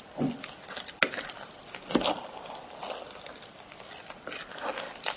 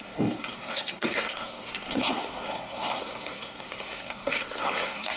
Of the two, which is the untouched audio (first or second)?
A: first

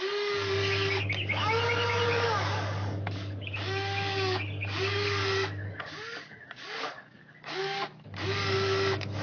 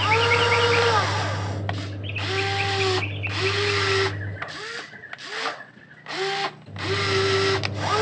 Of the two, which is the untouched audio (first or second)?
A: second